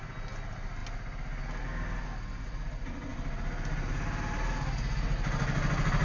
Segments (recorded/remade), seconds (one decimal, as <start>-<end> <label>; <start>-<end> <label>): 0.0-6.0 recorded